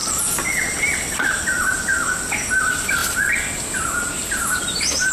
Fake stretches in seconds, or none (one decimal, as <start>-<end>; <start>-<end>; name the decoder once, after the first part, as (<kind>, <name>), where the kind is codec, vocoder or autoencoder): 0.0-2.5 (vocoder, BigVGAN v2); 3.0-3.6